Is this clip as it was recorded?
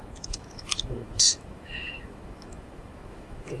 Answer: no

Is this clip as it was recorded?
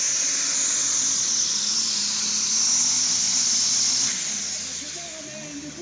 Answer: yes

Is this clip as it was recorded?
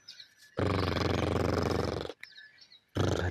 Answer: yes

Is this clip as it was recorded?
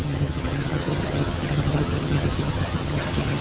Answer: no